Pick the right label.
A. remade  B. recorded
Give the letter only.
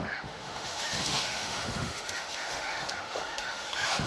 A